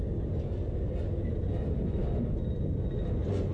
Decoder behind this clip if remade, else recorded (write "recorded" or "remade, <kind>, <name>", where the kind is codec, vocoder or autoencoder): recorded